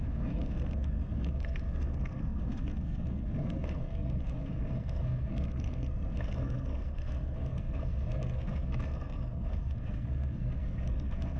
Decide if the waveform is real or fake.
fake